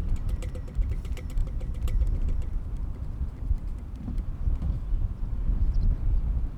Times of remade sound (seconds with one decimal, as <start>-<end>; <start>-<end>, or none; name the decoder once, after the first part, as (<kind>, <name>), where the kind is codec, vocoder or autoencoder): 1.4-5.4 (vocoder, BigVGAN v2)